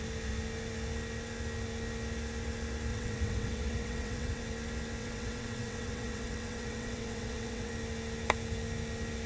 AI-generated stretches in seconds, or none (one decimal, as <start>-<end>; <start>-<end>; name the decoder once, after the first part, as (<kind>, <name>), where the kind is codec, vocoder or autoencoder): 2.9-4.4 (vocoder, WaveNeXt); 5.0-7.7